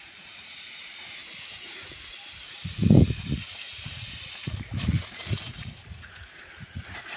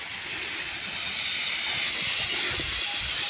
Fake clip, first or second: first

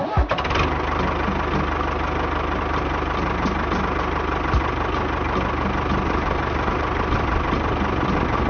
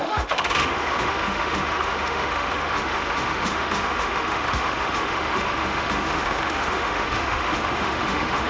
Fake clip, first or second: second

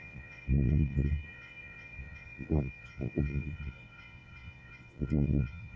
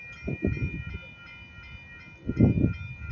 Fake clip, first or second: first